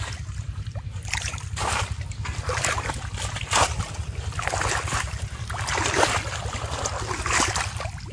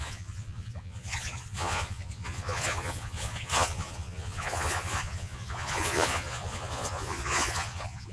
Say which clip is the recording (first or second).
first